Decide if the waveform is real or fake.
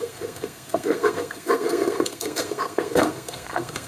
fake